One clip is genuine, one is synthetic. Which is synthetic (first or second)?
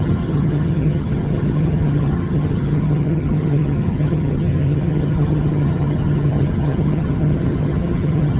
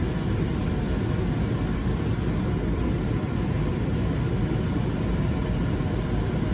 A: first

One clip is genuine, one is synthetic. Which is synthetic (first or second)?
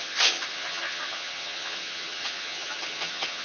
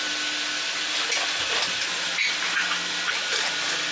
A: first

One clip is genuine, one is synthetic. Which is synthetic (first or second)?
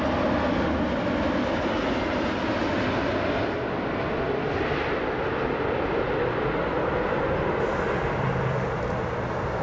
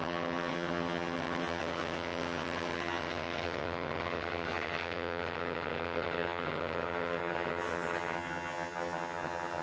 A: second